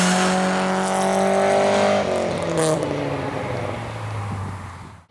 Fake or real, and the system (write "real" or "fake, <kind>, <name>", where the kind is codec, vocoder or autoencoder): real